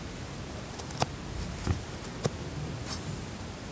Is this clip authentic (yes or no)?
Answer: yes